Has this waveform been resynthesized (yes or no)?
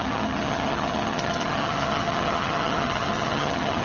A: yes